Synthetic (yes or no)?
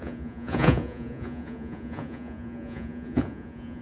yes